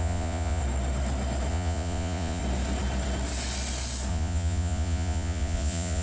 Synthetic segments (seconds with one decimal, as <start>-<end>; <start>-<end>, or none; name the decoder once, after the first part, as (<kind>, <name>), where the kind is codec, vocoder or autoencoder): 0.0-0.6 (vocoder, Vocos); 1.5-2.4; 4.1-6.0